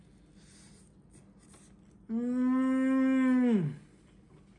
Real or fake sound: real